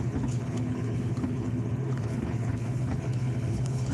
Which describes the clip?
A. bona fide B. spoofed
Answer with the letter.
B